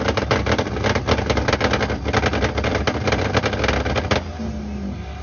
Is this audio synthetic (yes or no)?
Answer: no